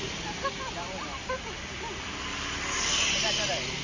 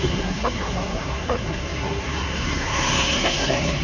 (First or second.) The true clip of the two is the first